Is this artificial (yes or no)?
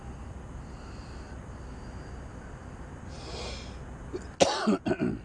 no